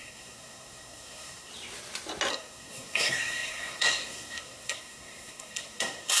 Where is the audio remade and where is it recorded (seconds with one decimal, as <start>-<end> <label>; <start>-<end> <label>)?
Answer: 0.0-1.5 remade; 1.5-2.3 recorded; 2.3-6.2 remade